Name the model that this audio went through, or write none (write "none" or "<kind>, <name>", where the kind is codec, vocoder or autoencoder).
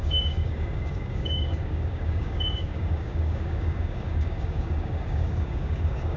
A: codec, DAC